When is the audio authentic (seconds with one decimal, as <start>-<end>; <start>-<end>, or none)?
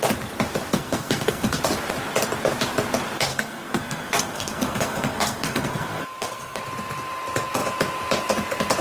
0.0-0.7; 1.6-3.3; 6.6-8.8